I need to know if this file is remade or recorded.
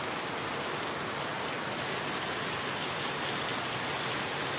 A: recorded